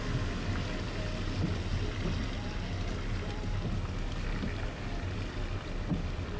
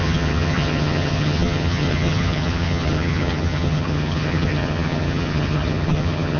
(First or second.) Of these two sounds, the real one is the first